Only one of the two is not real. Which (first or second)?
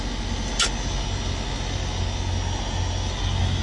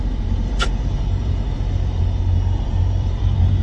second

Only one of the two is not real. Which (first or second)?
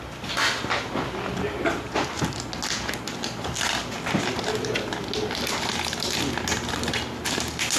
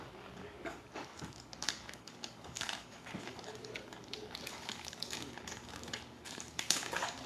second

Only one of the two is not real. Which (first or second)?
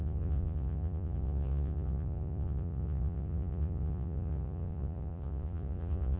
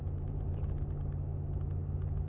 first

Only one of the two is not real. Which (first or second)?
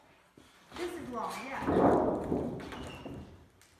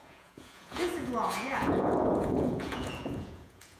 second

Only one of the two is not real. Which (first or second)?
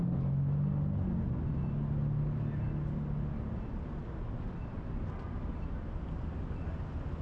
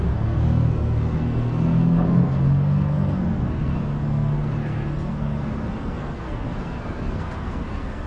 second